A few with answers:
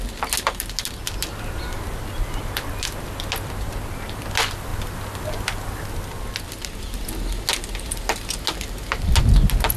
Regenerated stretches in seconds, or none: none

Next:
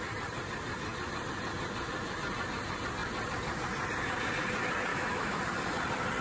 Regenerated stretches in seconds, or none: 4.9-5.4 (autoencoder, DAC-VAE)

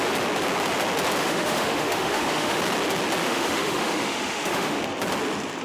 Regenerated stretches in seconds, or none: 1.2-2.6 (autoencoder, DAC-VAE); 3.2-4.8

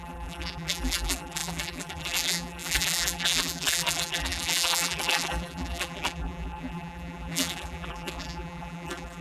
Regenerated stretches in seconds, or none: 0.0-9.2 (vocoder, BigVGAN v2)

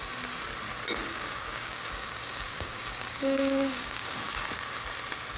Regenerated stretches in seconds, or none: 1.1-4.3 (codec, DAC)

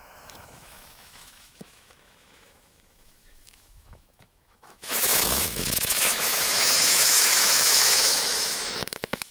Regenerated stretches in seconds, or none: 0.0-9.3 (autoencoder, DAC-VAE)